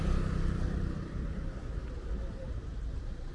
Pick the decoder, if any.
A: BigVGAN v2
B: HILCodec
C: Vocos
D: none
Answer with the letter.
D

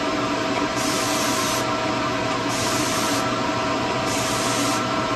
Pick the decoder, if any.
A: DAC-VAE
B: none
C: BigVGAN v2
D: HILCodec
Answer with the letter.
C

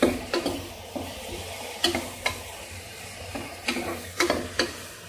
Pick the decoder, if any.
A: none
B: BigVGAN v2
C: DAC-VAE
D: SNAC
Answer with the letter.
A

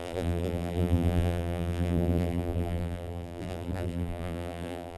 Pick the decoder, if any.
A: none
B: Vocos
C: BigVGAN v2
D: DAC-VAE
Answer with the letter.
C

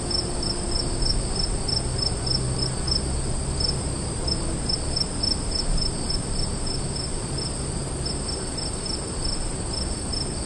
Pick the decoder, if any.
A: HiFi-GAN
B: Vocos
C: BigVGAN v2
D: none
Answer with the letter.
D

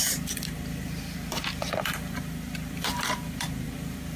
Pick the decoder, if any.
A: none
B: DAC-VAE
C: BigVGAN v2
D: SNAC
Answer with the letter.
C